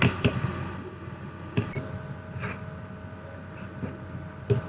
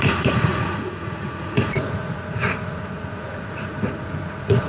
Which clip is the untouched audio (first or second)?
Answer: first